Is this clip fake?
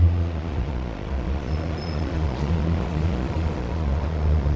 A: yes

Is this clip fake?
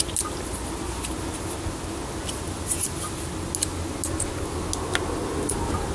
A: no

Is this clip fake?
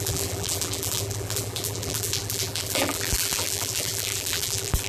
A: yes